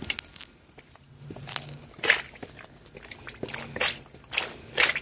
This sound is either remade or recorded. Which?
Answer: recorded